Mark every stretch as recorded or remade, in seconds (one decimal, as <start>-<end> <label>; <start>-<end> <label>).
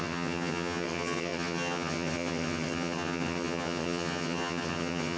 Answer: 0.0-5.2 remade